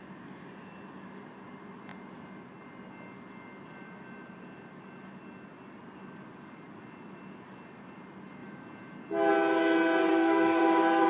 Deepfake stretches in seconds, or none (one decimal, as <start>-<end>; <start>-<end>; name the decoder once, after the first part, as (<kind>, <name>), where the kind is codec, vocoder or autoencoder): 10.1-10.6 (codec, SNAC)